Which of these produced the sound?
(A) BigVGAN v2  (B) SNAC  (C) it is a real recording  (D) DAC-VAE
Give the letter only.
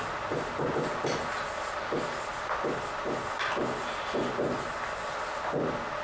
C